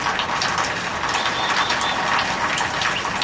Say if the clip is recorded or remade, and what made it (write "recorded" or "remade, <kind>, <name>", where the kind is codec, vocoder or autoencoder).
recorded